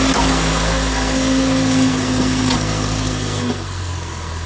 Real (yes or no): no